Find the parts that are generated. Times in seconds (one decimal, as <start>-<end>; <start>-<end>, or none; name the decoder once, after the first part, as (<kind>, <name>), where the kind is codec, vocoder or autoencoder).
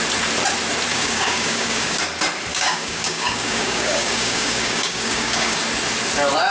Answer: 0.9-2.0 (codec, DAC); 2.5-5.6